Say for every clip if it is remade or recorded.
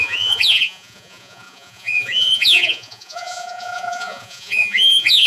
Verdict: remade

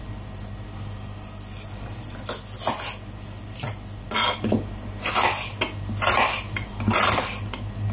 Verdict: recorded